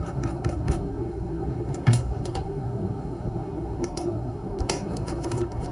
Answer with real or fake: fake